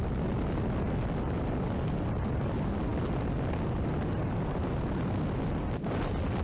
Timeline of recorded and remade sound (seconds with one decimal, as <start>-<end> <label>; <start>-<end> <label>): 0.0-6.4 recorded